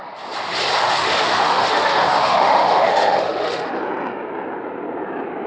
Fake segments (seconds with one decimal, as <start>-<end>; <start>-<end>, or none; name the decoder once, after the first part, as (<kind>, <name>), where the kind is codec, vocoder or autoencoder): 1.0-3.7 (autoencoder, DAC-VAE)